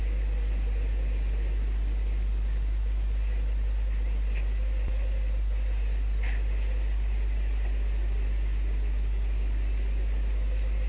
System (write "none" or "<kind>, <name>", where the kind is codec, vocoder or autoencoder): none